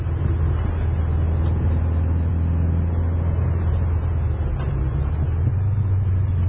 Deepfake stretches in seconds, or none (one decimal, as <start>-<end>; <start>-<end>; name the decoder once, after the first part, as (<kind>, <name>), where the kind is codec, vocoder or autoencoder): none